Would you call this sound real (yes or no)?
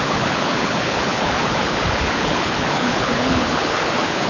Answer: no